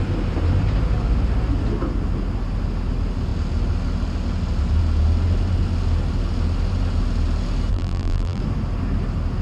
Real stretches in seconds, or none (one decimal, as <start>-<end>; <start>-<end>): 0.0-7.7; 8.4-9.4